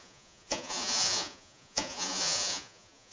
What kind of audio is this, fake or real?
fake